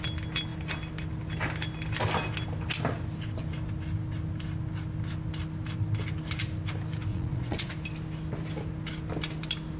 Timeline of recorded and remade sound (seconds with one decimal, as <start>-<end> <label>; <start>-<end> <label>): 0.0-7.1 recorded; 7.1-7.7 remade; 7.7-9.8 recorded